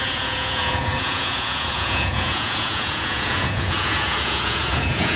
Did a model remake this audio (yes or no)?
yes